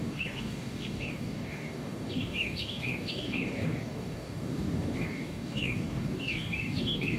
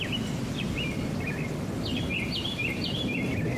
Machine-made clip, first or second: first